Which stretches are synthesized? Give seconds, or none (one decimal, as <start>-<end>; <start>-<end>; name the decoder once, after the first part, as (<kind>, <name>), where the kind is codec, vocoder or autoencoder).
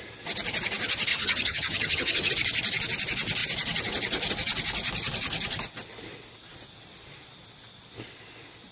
1.1-2.3 (vocoder, HiFi-GAN)